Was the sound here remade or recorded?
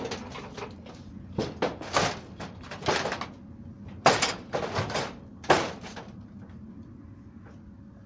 recorded